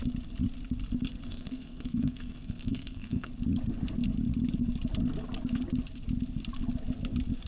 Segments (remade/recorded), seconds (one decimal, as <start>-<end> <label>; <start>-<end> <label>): 0.0-1.3 recorded; 1.3-3.3 remade; 3.3-7.5 recorded